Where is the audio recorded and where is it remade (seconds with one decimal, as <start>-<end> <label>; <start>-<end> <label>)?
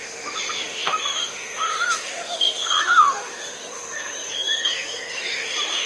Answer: 0.0-5.9 remade